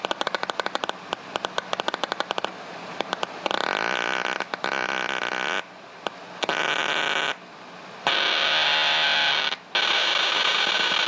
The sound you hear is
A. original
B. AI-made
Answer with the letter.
A